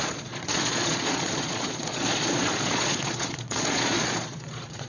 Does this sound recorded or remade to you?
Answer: remade